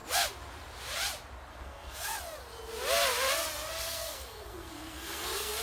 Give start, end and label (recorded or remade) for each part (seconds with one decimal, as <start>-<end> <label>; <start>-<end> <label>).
0.0-1.5 recorded; 1.5-2.1 remade; 2.1-3.8 recorded; 3.8-5.6 remade